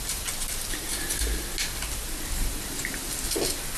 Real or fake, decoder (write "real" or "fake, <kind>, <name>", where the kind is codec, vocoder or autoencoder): real